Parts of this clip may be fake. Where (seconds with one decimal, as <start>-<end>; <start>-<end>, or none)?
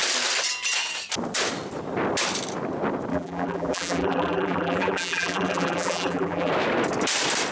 3.1-6.5